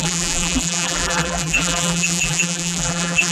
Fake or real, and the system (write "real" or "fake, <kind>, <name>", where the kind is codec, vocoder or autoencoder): fake, vocoder, BigVGAN v2